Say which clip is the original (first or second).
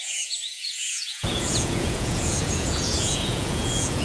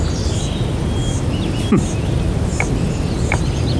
second